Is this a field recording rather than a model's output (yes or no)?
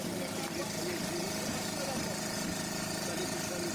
yes